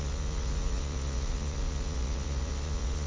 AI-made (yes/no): yes